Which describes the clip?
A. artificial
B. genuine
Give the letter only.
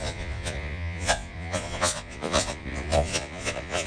A